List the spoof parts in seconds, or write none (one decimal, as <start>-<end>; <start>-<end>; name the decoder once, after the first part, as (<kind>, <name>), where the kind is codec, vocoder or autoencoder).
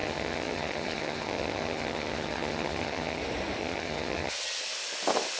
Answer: 0.0-3.2 (vocoder, HiFi-GAN); 3.6-4.6